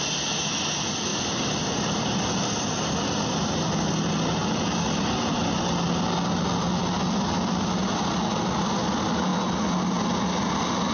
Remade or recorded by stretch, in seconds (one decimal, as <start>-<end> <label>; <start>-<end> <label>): 0.0-1.1 recorded; 1.1-3.5 remade; 3.5-4.4 recorded; 4.4-5.6 remade; 5.6-10.9 recorded